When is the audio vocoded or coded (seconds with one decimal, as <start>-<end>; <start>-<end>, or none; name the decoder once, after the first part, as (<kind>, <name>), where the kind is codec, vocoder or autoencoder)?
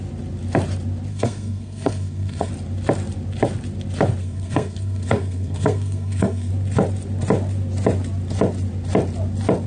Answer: 1.1-2.5 (codec, SNAC); 4.2-6.5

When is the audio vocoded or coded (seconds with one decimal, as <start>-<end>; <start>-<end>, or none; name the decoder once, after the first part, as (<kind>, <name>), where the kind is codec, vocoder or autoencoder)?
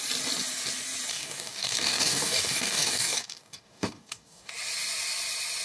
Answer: 1.1-4.5 (codec, DAC)